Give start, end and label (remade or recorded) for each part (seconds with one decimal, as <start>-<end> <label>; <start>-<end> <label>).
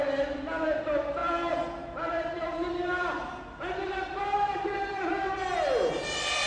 0.0-6.5 remade